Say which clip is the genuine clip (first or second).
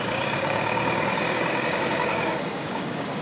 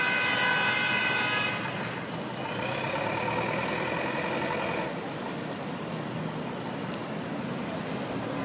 second